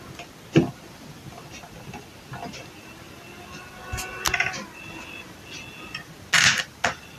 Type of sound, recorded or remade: recorded